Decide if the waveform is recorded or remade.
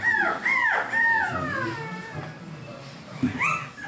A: recorded